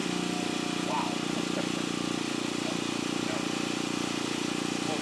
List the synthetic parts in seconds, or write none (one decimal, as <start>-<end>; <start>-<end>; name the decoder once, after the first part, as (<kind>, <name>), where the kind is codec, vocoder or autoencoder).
none